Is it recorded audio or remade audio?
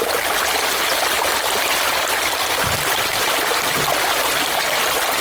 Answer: recorded